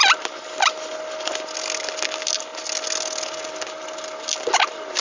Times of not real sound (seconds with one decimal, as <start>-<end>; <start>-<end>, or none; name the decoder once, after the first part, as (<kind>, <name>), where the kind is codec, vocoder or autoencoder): none

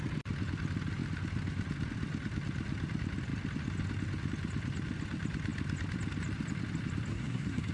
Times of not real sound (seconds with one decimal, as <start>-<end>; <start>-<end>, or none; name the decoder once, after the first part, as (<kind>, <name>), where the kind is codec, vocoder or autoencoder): 7.1-7.7 (codec, SNAC)

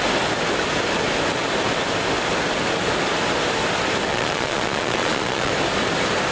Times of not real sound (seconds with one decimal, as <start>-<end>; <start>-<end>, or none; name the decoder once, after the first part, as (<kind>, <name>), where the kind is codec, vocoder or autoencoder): 4.1-5.5 (vocoder, Vocos)

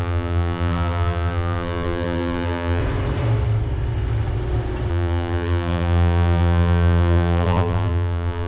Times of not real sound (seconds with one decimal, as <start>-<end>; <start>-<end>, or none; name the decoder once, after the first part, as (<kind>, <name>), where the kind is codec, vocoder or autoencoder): 0.0-2.8 (vocoder, BigVGAN v2); 4.9-8.5

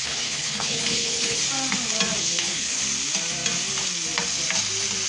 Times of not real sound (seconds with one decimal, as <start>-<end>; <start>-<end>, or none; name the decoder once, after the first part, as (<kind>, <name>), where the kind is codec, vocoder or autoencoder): 0.0-1.4 (codec, HILCodec); 2.2-2.8

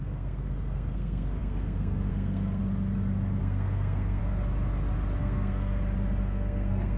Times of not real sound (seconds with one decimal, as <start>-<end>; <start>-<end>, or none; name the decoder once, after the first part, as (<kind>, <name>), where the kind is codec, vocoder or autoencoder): 0.0-2.6 (codec, SNAC); 3.4-4.2; 5.2-5.7; 6.2-7.0